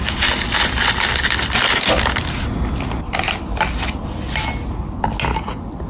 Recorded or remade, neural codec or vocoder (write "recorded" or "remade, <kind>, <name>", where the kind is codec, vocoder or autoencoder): recorded